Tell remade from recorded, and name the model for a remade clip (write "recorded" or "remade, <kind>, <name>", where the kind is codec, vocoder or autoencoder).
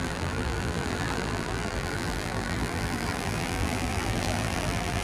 remade, vocoder, BigVGAN v2